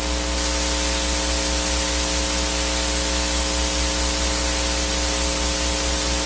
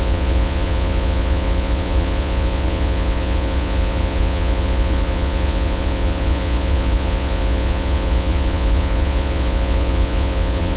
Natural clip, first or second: first